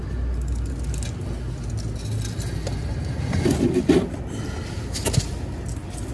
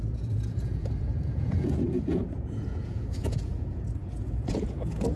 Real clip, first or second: first